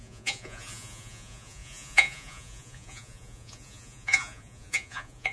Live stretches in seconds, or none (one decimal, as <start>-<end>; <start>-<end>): none

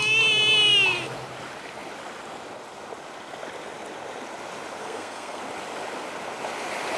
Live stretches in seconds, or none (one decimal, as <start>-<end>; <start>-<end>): 0.0-4.8; 5.4-7.0

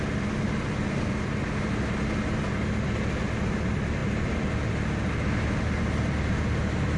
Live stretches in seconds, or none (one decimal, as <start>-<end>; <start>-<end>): 0.0-7.0

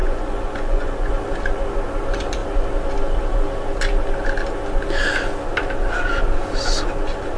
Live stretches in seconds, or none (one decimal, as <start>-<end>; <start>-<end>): 1.1-7.4